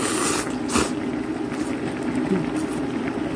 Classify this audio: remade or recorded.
recorded